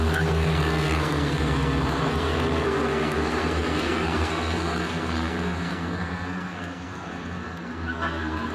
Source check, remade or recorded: remade